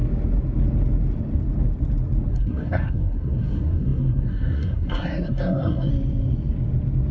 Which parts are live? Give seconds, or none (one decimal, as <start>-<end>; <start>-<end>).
0.0-2.3; 5.9-7.1